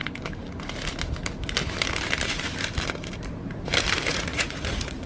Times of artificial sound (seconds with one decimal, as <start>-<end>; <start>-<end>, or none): 4.1-5.1